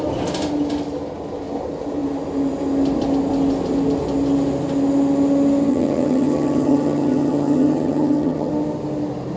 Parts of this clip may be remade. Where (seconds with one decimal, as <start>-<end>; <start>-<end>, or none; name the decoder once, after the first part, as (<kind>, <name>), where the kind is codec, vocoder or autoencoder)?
5.7-8.5 (vocoder, HiFi-GAN)